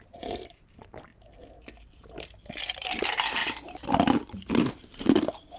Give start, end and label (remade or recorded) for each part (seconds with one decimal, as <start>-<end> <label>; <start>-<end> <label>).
0.0-1.1 remade; 1.1-2.5 recorded; 2.5-3.4 remade; 3.4-4.6 recorded; 4.6-5.6 remade

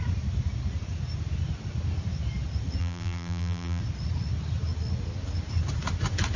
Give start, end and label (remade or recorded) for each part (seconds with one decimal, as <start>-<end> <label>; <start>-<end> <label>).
0.0-2.8 recorded; 2.8-3.8 remade; 3.8-6.4 recorded

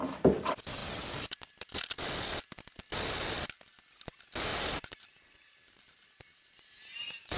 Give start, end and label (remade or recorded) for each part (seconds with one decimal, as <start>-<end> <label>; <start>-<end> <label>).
0.0-4.5 recorded; 4.5-7.4 remade

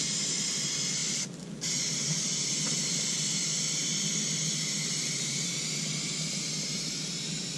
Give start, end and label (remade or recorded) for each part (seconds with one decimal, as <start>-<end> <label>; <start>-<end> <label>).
0.0-7.6 recorded

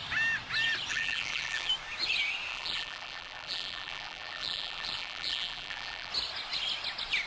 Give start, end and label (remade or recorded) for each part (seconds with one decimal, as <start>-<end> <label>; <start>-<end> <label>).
0.0-0.9 recorded; 0.9-1.7 remade; 1.7-2.5 recorded; 2.5-6.1 remade; 6.1-7.3 recorded

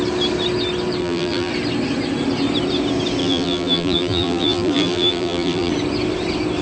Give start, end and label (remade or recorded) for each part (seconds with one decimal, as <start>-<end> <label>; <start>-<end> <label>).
0.0-1.0 recorded; 1.0-1.5 remade; 1.5-3.2 recorded; 3.2-5.7 remade; 5.7-6.6 recorded

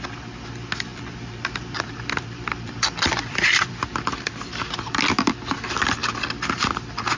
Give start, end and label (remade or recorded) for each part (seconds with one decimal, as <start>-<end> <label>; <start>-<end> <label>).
0.0-0.9 recorded; 0.9-5.0 remade; 5.0-7.2 recorded